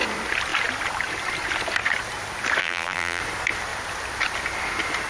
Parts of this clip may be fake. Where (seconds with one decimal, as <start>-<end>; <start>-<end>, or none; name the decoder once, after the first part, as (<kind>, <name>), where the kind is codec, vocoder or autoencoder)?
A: 2.6-3.2 (vocoder, BigVGAN v2)